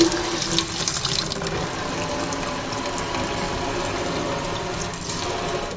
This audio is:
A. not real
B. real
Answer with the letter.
B